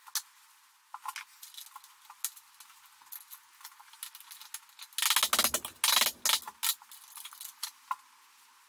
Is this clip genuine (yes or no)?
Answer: yes